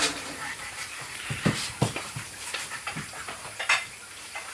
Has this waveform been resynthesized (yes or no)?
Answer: yes